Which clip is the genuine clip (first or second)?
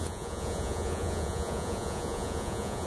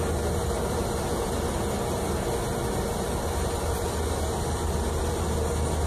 second